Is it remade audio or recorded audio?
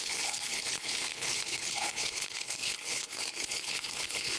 remade